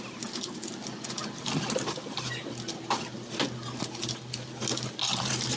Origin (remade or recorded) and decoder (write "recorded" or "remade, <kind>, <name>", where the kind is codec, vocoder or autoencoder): recorded